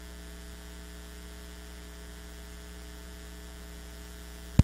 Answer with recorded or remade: recorded